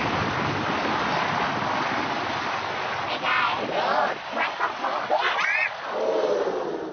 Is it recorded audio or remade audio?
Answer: recorded